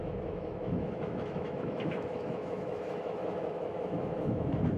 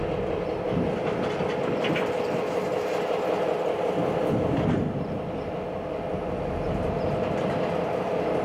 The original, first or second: second